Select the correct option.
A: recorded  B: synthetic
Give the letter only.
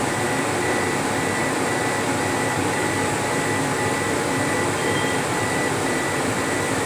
A